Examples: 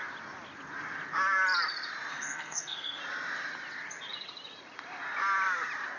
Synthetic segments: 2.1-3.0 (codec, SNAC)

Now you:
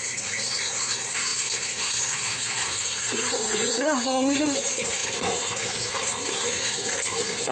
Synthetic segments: 0.0-7.5 (codec, SNAC)